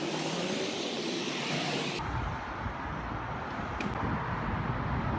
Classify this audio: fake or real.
real